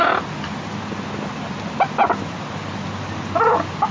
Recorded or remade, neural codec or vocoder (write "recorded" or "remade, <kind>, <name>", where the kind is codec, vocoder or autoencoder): recorded